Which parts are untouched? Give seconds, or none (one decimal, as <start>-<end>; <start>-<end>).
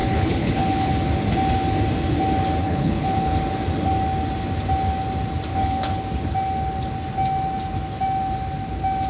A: 0.9-2.6; 3.3-5.5; 6.0-9.1